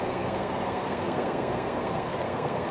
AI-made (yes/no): yes